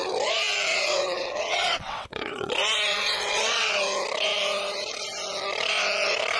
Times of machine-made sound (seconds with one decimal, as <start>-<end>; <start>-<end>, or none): 0.7-2.5; 2.9-3.8